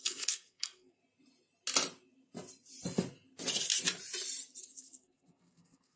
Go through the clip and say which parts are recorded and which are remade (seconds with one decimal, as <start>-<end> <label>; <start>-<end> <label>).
0.0-1.0 remade; 1.0-4.6 recorded; 4.6-6.0 remade